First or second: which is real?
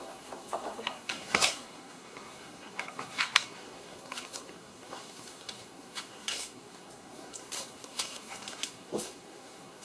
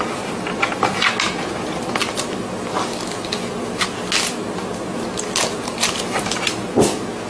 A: second